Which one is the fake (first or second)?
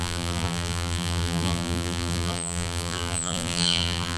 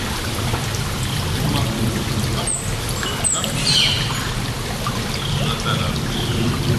first